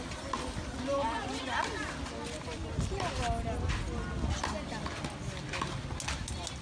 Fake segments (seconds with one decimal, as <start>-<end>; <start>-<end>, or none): 0.9-1.4